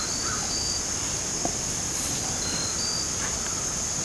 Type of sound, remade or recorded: recorded